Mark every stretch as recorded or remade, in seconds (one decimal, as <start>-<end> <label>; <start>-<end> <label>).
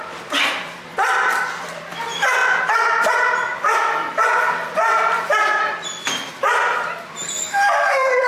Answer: 0.0-8.3 remade